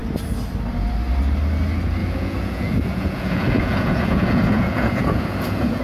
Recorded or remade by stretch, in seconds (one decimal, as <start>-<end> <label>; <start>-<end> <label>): 0.0-2.0 recorded; 2.0-5.8 remade